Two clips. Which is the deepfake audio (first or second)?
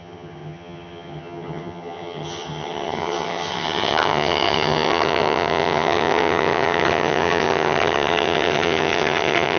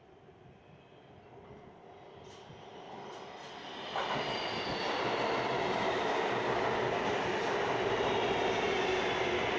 first